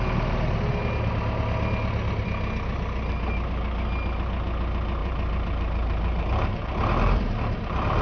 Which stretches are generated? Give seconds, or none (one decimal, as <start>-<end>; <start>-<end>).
5.0-8.0